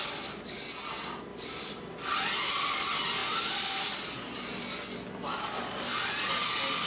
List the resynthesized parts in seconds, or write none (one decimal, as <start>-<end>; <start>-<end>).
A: 1.3-2.5